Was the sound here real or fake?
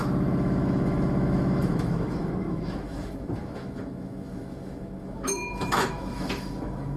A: fake